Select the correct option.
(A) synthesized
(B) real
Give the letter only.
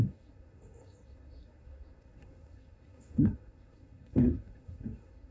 A